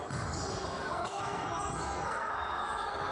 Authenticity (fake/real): fake